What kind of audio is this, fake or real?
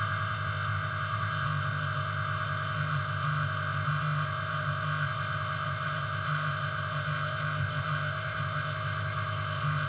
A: fake